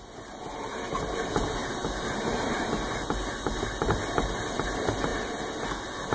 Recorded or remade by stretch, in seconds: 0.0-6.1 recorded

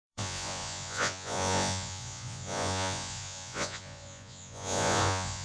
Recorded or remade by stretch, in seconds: 0.0-5.4 remade

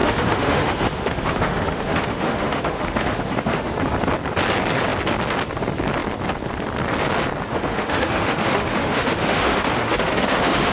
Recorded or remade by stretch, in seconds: 0.0-3.7 remade; 3.7-7.5 recorded; 7.5-10.7 remade

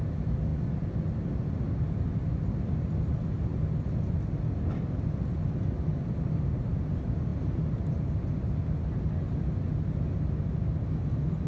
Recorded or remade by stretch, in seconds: 0.0-11.5 recorded

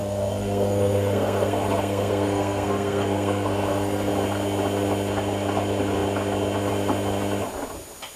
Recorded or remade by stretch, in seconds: 0.0-4.1 remade; 4.1-8.2 recorded